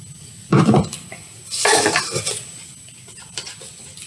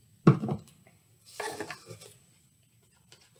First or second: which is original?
second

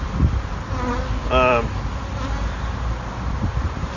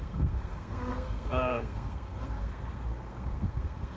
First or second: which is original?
first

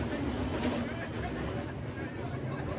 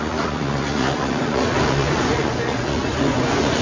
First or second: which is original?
first